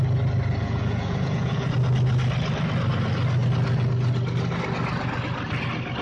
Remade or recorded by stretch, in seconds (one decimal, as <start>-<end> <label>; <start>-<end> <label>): 0.0-0.6 recorded; 0.6-1.7 remade; 1.7-6.0 recorded